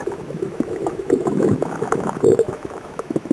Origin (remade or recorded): remade